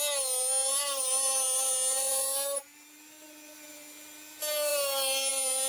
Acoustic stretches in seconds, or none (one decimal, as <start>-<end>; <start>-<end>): 0.0-5.7